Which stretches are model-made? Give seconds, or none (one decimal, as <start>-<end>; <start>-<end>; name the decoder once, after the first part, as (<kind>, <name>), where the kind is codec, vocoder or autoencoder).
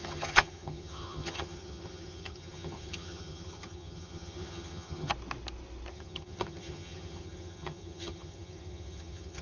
0.0-5.1 (vocoder, HiFi-GAN); 5.9-9.4